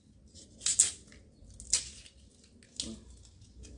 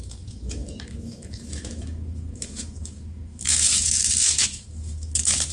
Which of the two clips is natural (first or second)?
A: first